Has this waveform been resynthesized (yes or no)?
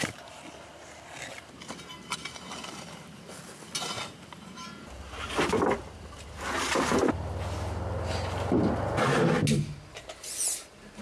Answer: no